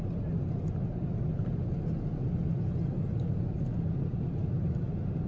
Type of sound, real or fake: real